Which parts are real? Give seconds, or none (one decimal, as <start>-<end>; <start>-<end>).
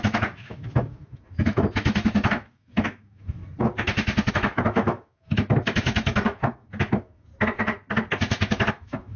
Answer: 3.4-4.3; 7.3-8.7